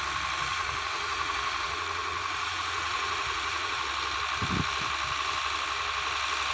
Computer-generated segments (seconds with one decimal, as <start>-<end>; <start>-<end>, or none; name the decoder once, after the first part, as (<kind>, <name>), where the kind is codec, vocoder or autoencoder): 0.5-3.8 (vocoder, Vocos)